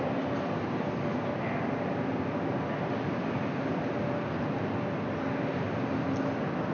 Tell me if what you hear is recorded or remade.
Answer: recorded